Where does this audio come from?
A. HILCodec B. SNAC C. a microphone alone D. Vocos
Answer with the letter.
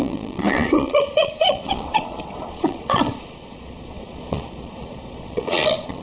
D